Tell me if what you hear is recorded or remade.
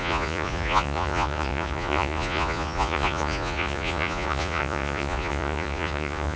remade